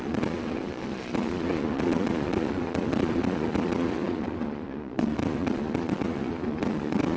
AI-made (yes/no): yes